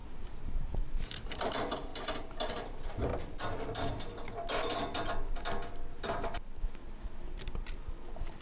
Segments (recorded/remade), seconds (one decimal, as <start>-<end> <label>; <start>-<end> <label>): 0.0-1.9 remade; 1.9-2.5 recorded; 2.5-3.1 remade; 3.1-6.6 recorded; 6.6-8.4 remade